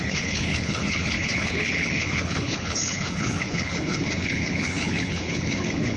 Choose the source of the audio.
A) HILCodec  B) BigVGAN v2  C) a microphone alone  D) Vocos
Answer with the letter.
A